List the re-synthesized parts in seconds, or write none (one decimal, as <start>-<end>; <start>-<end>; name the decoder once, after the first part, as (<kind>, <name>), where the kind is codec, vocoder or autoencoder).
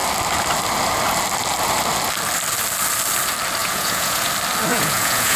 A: 3.6-4.3 (vocoder, Vocos); 4.7-5.4